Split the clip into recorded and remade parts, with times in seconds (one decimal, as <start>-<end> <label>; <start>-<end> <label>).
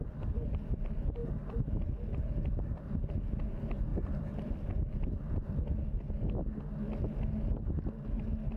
0.0-3.9 recorded; 3.9-6.1 remade; 6.1-8.6 recorded